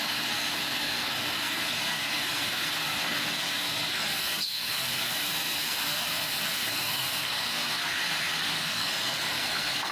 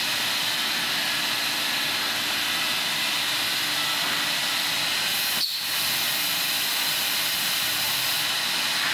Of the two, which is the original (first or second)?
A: second